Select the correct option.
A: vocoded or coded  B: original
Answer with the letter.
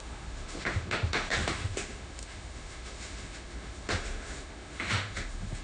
A